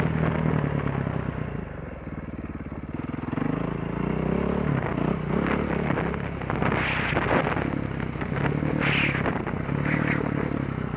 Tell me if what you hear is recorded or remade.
recorded